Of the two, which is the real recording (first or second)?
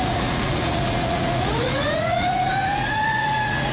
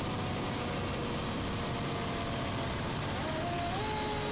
second